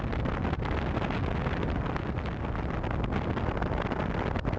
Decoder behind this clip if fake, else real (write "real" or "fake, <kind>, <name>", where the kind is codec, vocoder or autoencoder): real